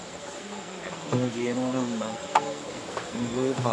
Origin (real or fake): fake